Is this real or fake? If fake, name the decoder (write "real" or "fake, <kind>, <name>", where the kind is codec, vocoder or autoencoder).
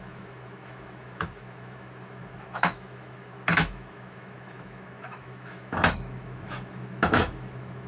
fake, autoencoder, DAC-VAE